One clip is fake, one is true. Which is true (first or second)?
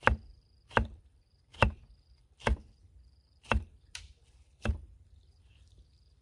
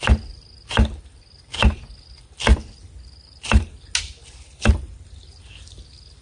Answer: second